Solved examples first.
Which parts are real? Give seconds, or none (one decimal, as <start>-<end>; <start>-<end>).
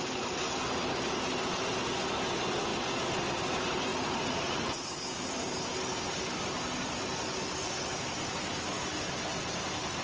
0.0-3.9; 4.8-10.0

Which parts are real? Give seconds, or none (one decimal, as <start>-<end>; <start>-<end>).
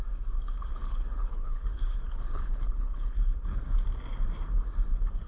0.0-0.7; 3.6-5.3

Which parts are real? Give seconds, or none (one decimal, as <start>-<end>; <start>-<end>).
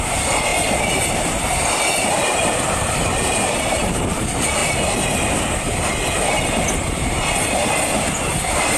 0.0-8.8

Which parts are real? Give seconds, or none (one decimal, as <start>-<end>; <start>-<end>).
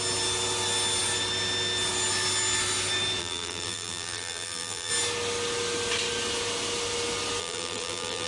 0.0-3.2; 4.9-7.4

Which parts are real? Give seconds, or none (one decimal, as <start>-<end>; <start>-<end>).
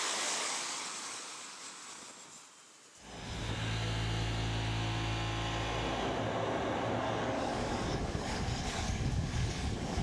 1.8-7.0